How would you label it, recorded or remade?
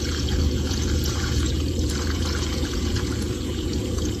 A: remade